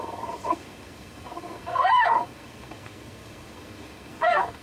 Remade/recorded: remade